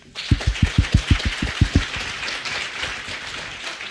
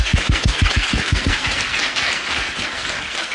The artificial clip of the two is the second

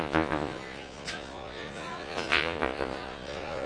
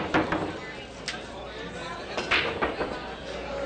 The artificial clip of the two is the first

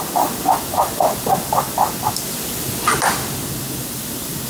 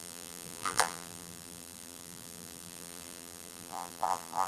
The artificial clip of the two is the second